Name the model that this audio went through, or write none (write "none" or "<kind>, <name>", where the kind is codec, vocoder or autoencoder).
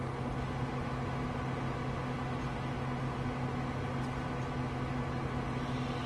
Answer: none